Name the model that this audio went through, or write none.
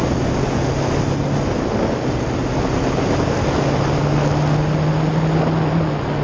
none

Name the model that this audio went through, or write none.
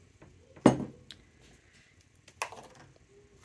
none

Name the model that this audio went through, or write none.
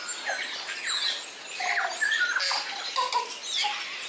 none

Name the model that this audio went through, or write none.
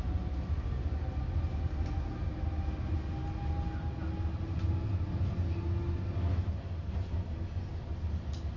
none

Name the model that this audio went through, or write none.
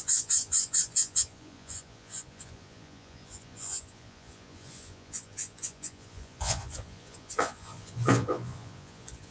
vocoder, Vocos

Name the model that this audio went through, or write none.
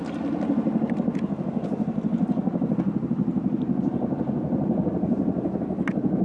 none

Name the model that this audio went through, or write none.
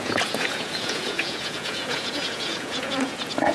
vocoder, Vocos